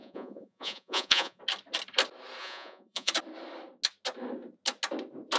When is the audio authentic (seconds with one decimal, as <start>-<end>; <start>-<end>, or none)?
1.4-2.4; 3.1-5.4